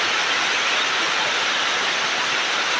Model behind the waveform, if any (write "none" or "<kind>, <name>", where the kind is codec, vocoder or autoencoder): none